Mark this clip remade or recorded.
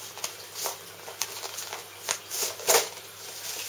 recorded